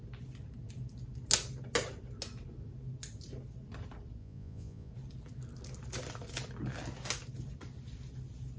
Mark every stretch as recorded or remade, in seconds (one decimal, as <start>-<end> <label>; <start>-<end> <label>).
0.0-4.2 recorded; 4.2-4.9 remade; 4.9-8.6 recorded

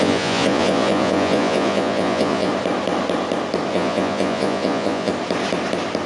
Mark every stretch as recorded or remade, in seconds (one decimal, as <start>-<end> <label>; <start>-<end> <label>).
0.0-2.5 remade; 2.5-3.7 recorded; 3.7-5.1 remade; 5.1-6.1 recorded

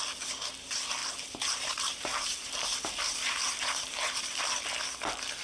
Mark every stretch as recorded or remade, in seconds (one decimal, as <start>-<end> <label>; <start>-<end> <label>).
0.0-1.0 recorded; 1.0-4.2 remade; 4.2-5.4 recorded

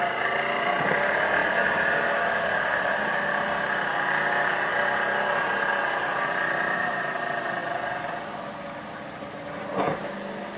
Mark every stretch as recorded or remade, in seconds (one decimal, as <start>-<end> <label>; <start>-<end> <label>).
0.0-1.4 recorded; 1.4-3.1 remade; 3.1-10.6 recorded

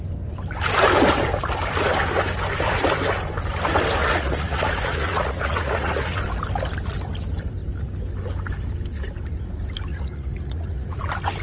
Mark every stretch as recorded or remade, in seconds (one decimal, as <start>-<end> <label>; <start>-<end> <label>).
0.0-4.0 recorded; 4.0-6.2 remade; 6.2-9.9 recorded; 9.9-11.0 remade; 11.0-11.4 recorded

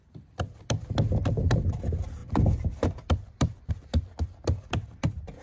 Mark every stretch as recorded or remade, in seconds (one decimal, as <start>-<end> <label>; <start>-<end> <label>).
0.0-0.9 remade; 0.9-2.2 recorded; 2.2-3.7 remade; 3.7-5.4 recorded

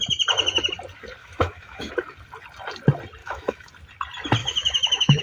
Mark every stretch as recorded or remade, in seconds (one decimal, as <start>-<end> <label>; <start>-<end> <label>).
0.0-1.2 recorded; 1.2-1.9 remade; 1.9-3.2 recorded; 3.2-3.7 remade; 3.7-4.4 recorded; 4.4-5.2 remade

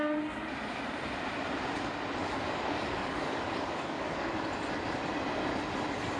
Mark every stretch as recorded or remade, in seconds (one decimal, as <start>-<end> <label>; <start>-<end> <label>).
0.0-2.2 recorded; 2.2-4.3 remade; 4.3-6.2 recorded